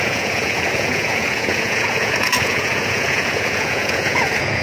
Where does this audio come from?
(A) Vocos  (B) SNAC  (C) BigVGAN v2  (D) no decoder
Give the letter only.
A